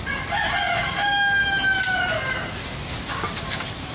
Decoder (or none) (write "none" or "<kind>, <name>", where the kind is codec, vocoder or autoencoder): none